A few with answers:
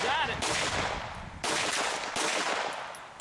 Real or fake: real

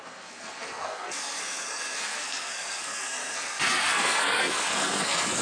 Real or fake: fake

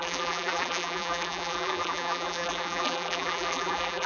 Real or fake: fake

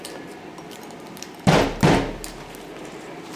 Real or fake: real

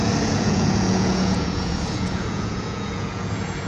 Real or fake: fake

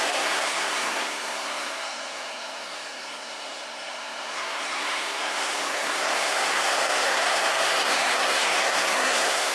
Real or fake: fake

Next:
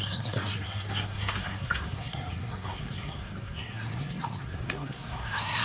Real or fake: fake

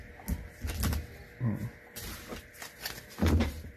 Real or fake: real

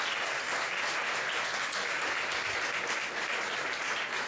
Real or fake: real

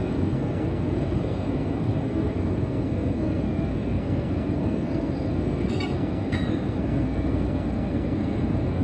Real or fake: fake